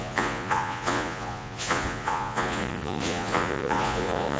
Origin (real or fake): fake